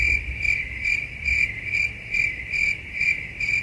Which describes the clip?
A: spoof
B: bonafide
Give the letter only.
B